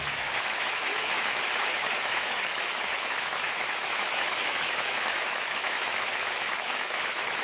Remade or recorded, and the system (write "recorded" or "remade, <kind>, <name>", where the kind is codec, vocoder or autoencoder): remade, autoencoder, DAC-VAE